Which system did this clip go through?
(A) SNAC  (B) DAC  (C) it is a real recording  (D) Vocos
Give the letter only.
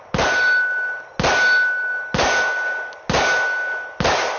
C